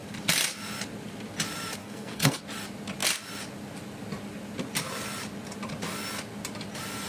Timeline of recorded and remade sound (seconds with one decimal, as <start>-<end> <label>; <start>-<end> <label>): 0.0-1.8 recorded; 1.8-2.4 remade; 2.4-7.1 recorded